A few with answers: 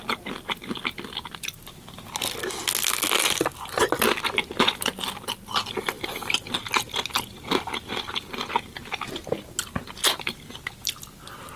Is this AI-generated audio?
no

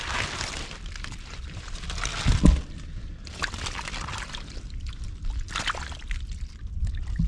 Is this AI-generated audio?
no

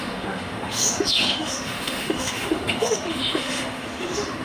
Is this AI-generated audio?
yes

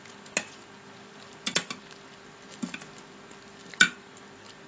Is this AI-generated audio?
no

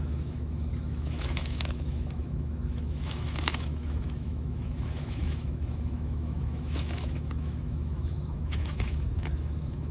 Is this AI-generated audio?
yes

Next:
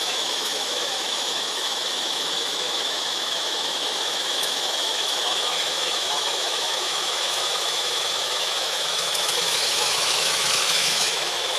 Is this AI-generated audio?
yes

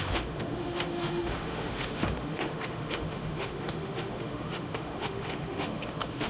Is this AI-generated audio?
yes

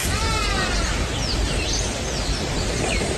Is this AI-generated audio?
no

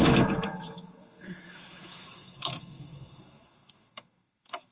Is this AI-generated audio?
yes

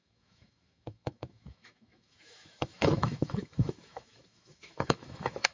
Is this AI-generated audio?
yes